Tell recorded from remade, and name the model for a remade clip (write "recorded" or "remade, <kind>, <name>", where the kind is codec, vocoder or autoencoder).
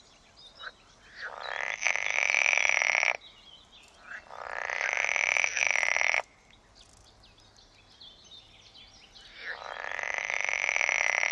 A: recorded